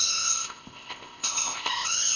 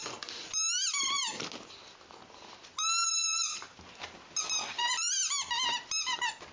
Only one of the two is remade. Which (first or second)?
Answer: first